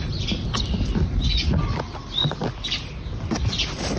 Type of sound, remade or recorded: recorded